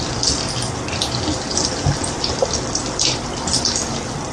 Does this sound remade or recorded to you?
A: recorded